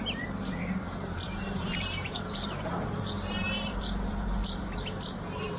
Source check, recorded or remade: remade